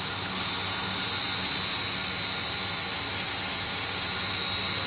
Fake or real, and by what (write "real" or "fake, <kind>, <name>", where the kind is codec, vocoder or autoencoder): real